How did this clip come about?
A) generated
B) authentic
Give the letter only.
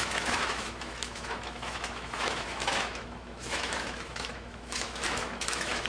A